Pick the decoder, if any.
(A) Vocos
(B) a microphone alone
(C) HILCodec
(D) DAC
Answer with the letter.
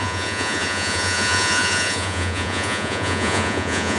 A